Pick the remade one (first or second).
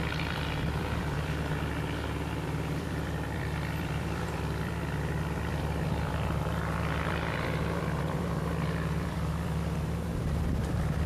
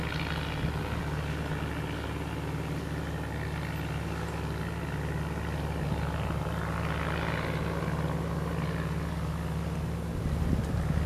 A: first